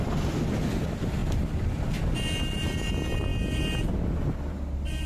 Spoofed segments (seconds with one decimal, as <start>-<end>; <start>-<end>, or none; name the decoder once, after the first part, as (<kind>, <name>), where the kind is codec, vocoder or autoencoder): none